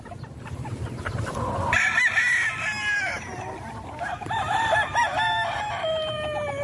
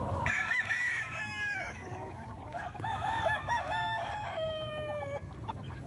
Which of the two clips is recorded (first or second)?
first